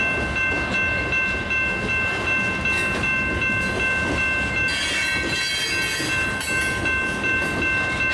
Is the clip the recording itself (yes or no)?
yes